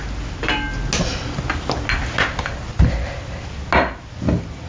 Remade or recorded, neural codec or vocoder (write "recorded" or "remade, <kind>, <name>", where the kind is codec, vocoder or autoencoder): recorded